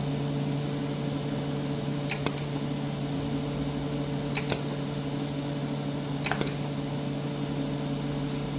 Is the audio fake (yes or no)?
no